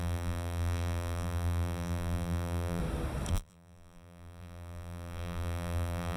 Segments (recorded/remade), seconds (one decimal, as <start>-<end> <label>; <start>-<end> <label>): 0.0-2.8 remade; 2.8-3.3 recorded; 3.3-6.2 remade

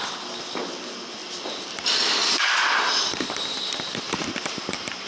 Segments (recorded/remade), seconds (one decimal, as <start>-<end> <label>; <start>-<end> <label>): 0.0-1.2 recorded; 1.2-4.3 remade; 4.3-5.1 recorded

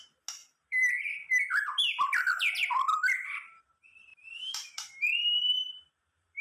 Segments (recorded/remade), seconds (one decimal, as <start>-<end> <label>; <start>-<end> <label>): 0.0-0.4 recorded; 0.4-1.1 remade; 1.1-4.1 recorded; 4.1-6.4 remade